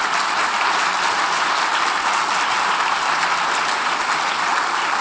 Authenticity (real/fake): real